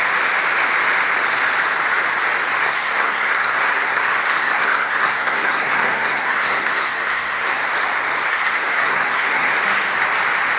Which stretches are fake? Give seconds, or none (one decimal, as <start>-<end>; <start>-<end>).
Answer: 2.6-7.6; 8.3-9.6